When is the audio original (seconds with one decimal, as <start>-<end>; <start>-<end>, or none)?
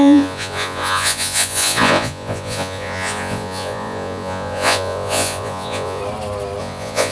6.0-6.6